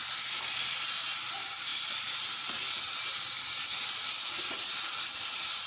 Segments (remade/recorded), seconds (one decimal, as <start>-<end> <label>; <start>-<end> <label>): 0.0-5.7 recorded